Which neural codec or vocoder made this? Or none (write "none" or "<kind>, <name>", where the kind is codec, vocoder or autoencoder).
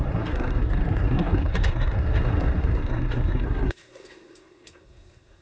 codec, SNAC